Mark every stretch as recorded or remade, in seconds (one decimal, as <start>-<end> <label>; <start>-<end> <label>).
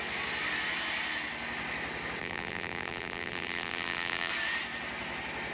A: 0.0-2.2 recorded; 2.2-4.3 remade; 4.3-5.5 recorded